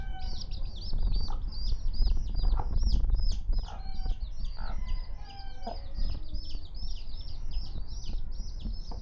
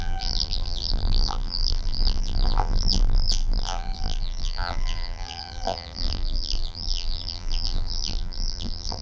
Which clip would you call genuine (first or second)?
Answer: first